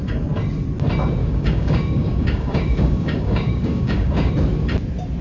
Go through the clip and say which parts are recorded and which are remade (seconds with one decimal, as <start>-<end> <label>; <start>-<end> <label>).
0.0-1.2 recorded; 1.2-4.3 remade; 4.3-5.2 recorded

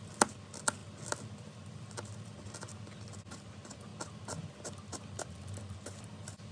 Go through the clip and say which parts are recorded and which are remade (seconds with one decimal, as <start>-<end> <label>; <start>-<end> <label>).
0.0-6.5 recorded

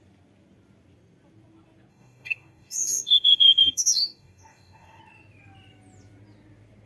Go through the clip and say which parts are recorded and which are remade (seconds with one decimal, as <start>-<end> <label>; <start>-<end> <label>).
0.0-1.9 recorded; 1.9-5.0 remade; 5.0-6.9 recorded

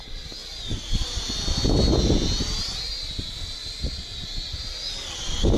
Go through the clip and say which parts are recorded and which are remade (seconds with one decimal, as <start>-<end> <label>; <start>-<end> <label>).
0.0-5.6 recorded